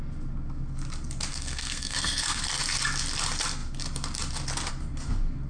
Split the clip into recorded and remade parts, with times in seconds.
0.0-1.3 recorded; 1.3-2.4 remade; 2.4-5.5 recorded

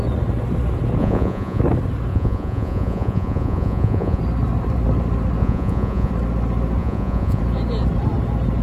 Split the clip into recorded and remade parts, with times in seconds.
0.0-1.0 recorded; 1.0-1.6 remade; 1.6-2.1 recorded; 2.1-4.2 remade; 4.2-5.4 recorded; 5.4-6.1 remade; 6.1-6.8 recorded; 6.8-7.4 remade; 7.4-8.6 recorded

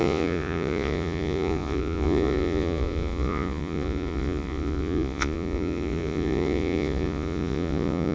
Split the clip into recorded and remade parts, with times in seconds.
0.0-8.1 remade

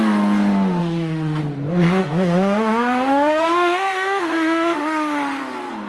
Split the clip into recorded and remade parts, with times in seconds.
0.0-0.8 recorded; 0.8-1.4 remade; 1.4-2.0 recorded; 2.0-5.4 remade; 5.4-5.9 recorded

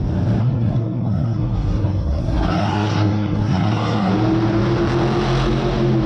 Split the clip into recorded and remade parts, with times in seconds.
0.0-0.4 recorded; 0.4-4.1 remade; 4.1-6.1 recorded

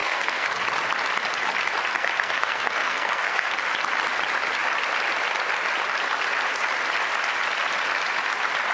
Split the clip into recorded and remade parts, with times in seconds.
0.0-0.6 remade; 0.6-1.9 recorded; 1.9-3.6 remade; 3.6-8.7 recorded